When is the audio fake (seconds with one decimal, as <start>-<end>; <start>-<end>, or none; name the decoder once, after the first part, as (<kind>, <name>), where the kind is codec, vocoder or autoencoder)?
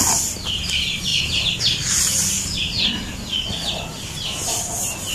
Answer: 1.1-1.6 (vocoder, BigVGAN v2)